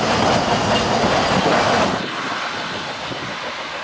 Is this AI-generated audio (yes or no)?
no